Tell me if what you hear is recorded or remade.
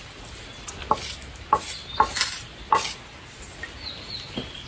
recorded